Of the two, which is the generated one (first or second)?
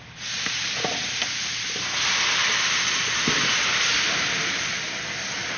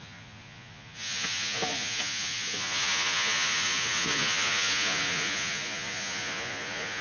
second